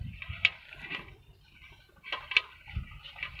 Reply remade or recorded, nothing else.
recorded